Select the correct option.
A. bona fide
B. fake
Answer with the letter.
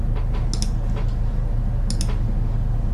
A